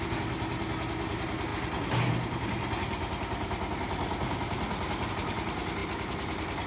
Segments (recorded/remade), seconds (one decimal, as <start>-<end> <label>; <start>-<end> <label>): 0.0-6.7 recorded